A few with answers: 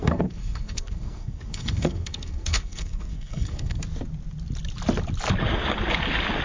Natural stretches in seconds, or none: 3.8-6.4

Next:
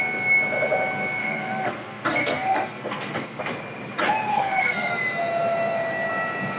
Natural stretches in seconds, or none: 0.0-1.2; 3.4-4.3; 4.9-6.6

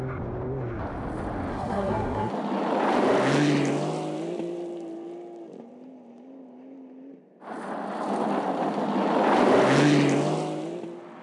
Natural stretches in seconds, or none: 0.0-1.5; 2.3-11.2